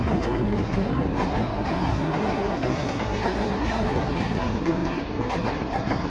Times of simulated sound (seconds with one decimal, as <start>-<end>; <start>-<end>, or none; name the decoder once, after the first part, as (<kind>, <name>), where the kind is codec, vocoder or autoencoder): 0.0-6.1 (codec, SNAC)